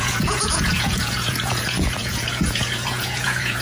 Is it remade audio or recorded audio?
remade